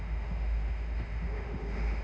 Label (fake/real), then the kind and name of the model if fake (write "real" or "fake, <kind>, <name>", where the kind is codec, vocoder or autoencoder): fake, autoencoder, DAC-VAE